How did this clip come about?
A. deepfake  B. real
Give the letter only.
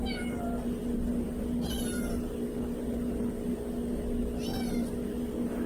B